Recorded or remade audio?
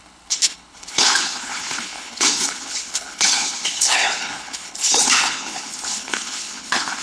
remade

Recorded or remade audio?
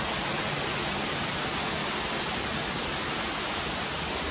recorded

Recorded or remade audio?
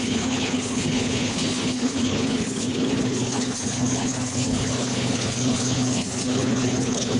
remade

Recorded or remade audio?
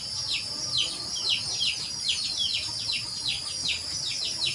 recorded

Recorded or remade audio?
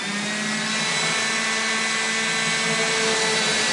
recorded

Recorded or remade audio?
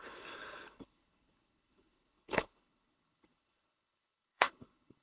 remade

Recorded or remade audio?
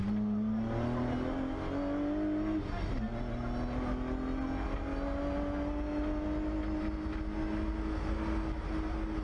recorded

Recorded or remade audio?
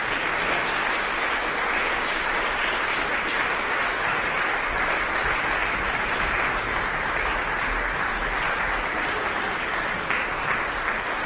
recorded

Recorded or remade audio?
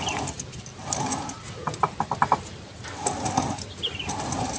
recorded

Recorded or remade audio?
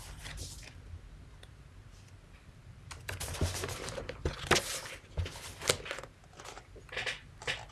recorded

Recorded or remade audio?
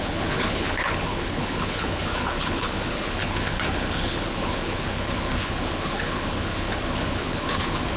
remade